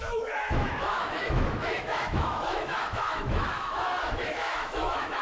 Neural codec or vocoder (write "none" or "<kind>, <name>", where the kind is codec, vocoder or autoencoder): autoencoder, DAC-VAE